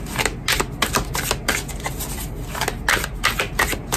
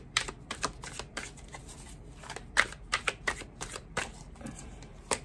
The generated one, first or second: second